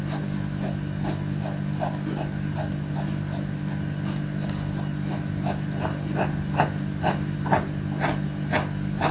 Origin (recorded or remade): recorded